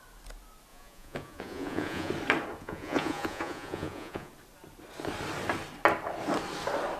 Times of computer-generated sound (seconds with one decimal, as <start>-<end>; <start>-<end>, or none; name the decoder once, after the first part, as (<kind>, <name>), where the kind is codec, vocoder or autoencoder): 0.7-2.1 (vocoder, Vocos); 2.6-4.3

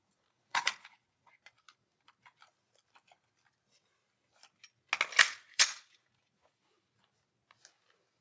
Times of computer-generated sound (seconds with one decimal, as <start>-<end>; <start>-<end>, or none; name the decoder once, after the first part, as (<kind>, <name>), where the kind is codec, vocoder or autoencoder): 0.0-1.3 (vocoder, Vocos); 5.2-6.6

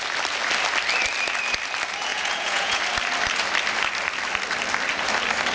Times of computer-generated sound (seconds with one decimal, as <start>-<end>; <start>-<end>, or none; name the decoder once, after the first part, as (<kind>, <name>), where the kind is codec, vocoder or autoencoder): 2.1-2.8 (vocoder, Vocos)

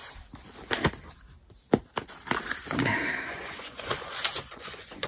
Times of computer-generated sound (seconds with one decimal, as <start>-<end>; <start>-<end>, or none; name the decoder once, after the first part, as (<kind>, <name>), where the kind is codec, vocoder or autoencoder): 3.1-5.1 (vocoder, Vocos)

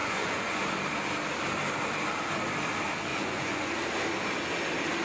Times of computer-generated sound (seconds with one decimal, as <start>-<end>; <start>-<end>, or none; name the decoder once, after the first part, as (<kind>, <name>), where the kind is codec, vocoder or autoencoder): 0.0-0.6 (vocoder, Vocos); 3.1-3.7